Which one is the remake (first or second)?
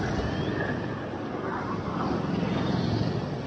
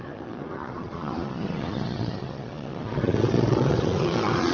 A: second